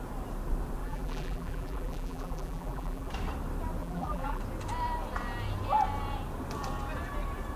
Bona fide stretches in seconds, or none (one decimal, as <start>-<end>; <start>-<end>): 0.0-0.8; 3.1-3.8; 4.4-7.6